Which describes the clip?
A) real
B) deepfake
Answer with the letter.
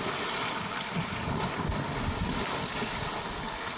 A